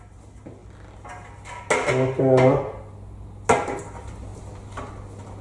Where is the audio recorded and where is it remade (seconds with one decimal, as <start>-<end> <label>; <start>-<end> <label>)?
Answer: 0.0-5.4 recorded